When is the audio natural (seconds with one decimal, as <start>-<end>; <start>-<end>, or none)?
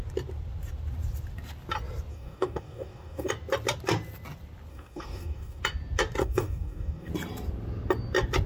0.0-2.1; 3.3-4.7; 5.6-6.2; 7.1-8.5